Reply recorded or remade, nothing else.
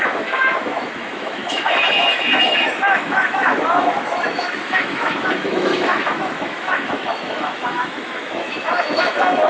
remade